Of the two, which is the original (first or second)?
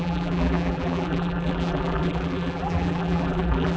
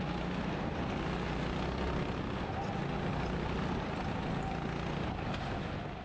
second